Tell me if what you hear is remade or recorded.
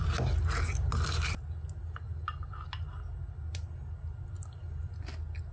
recorded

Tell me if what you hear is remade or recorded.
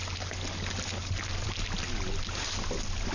recorded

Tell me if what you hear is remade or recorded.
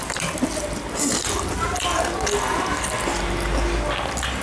recorded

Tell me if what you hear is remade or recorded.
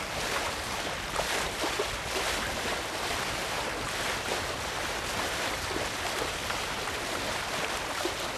recorded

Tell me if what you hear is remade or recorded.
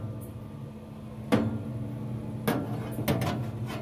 recorded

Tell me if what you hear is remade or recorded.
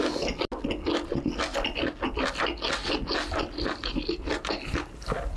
recorded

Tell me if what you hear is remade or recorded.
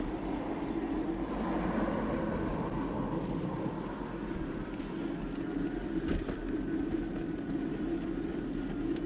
recorded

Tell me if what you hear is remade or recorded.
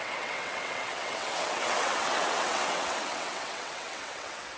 remade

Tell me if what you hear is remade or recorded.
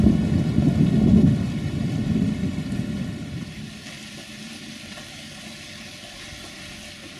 recorded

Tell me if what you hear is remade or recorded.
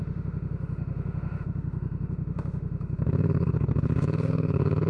remade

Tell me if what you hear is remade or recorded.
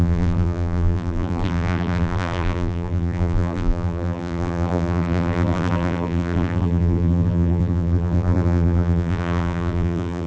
remade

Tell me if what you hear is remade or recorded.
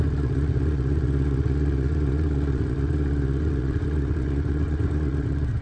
remade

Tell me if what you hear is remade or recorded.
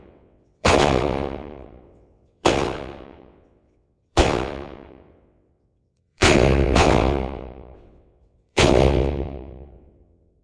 remade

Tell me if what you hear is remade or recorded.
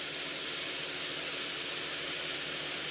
recorded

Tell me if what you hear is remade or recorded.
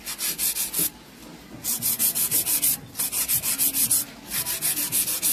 recorded